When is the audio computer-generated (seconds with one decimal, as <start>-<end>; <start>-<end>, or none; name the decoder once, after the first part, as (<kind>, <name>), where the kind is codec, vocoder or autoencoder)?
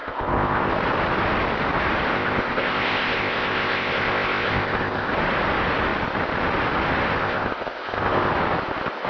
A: 0.0-0.7 (codec, ZipCodec); 2.1-5.1; 7.2-8.3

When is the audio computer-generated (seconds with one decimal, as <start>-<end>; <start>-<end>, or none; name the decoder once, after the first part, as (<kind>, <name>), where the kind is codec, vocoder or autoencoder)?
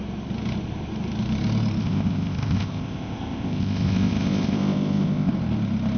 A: 1.8-5.3 (codec, ZipCodec)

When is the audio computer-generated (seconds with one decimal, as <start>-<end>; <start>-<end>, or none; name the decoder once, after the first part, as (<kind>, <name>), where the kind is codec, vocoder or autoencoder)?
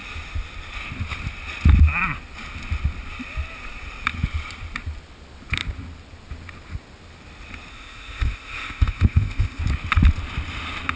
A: 7.7-9.6 (codec, ZipCodec)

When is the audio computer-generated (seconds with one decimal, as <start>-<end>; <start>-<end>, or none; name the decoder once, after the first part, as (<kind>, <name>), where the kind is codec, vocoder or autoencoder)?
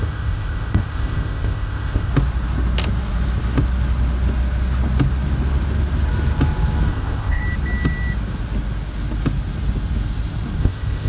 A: 0.0-2.1 (codec, ZipCodec); 6.9-7.4; 10.6-11.1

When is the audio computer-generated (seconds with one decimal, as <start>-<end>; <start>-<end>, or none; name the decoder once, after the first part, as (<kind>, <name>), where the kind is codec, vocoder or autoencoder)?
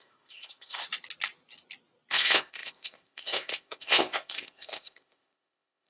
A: 0.0-0.8 (codec, ZipCodec); 2.1-5.9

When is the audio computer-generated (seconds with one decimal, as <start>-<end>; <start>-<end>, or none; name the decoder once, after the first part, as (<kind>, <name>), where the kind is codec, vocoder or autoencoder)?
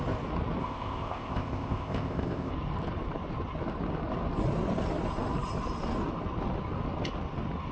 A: 0.6-2.5 (codec, ZipCodec)